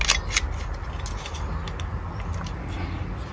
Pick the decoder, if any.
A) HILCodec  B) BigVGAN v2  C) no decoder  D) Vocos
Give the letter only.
C